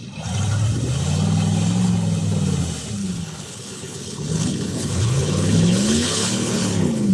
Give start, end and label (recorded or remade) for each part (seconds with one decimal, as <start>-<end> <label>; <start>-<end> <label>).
0.0-3.0 recorded; 3.0-7.1 remade